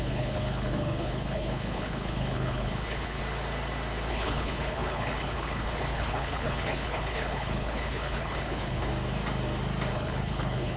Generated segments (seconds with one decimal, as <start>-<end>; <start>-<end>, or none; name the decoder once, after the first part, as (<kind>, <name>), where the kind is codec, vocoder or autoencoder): 0.0-3.2 (codec, HILCodec); 4.1-8.9; 9.9-10.8